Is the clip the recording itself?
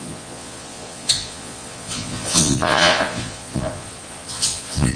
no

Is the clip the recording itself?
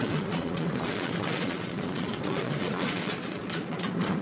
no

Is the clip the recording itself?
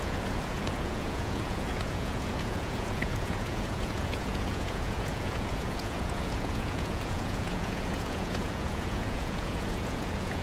no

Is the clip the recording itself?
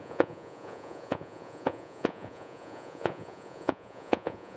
no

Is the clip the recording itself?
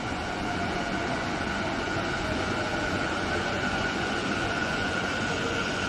no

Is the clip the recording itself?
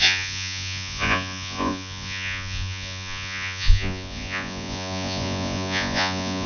no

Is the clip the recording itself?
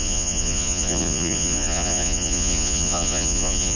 no